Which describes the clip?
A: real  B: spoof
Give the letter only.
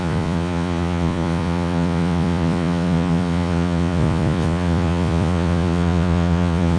B